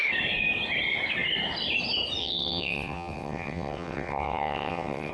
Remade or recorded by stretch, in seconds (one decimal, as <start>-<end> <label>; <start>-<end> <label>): 0.0-2.2 recorded; 2.2-5.1 remade